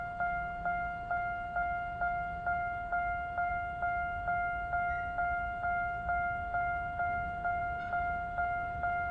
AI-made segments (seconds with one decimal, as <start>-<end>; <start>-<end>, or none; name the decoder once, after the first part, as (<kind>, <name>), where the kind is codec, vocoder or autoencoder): none